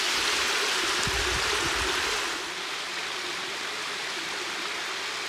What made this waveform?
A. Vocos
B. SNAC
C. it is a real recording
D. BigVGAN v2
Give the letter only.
C